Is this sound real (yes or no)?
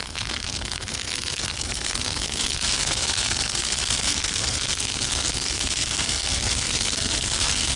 no